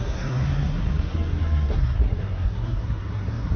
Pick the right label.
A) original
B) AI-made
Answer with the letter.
B